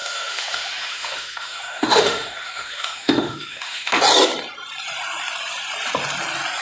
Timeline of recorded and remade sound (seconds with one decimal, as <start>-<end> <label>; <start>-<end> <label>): 0.0-4.0 remade; 4.0-6.6 recorded

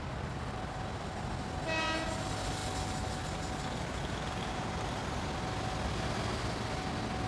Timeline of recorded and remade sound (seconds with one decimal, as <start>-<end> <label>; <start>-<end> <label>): 0.0-7.3 recorded

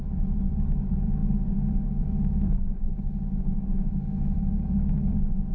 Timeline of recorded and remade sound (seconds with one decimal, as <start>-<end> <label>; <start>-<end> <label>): 0.0-5.5 recorded

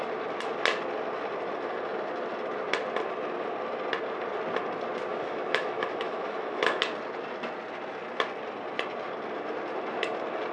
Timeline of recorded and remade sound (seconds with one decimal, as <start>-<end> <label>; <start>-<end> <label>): 0.0-5.1 recorded; 5.1-6.8 remade; 6.8-10.5 recorded

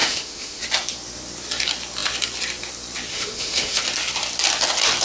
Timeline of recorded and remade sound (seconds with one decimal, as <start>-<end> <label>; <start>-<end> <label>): 0.0-0.6 remade; 0.6-3.1 recorded; 3.1-3.8 remade; 3.8-5.0 recorded

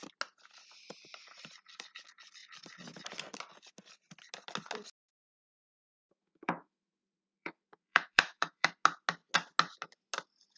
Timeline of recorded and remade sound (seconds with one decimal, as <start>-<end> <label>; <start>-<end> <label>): 0.0-5.4 recorded; 5.4-8.7 remade; 8.7-10.6 recorded

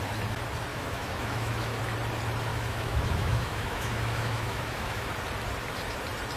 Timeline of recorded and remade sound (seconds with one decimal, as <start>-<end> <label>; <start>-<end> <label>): 0.0-0.7 recorded; 0.7-1.8 remade; 1.8-2.5 recorded; 2.5-5.1 remade; 5.1-6.4 recorded